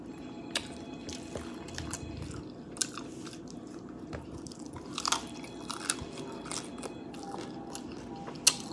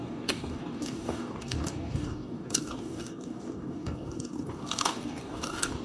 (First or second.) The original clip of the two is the first